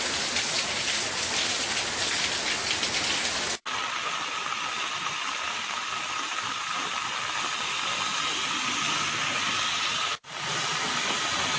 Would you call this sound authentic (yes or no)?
yes